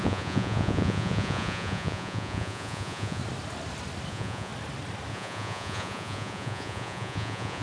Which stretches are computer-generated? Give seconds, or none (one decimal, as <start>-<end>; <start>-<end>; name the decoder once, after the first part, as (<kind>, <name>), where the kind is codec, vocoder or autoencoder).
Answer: 0.0-3.2 (vocoder, Vocos); 4.1-4.5; 5.1-7.6